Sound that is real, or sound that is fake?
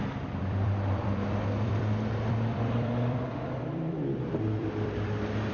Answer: fake